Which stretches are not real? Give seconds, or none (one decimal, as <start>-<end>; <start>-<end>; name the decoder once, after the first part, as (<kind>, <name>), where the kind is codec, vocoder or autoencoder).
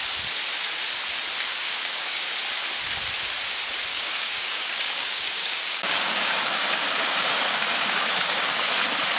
1.5-2.4 (codec, DAC); 3.9-8.7